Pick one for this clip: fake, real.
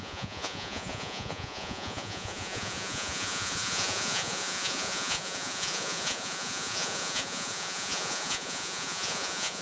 fake